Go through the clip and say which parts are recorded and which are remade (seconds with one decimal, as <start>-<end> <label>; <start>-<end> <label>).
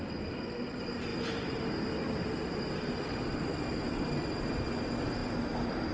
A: 0.0-5.9 recorded